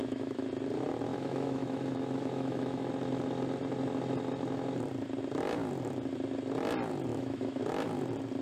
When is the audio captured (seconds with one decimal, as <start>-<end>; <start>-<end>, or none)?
0.5-1.1; 2.9-7.1; 7.6-8.4